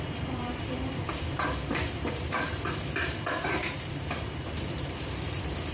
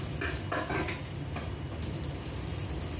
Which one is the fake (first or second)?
first